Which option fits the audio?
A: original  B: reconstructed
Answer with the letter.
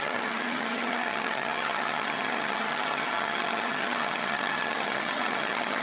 B